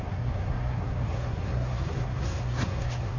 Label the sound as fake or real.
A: fake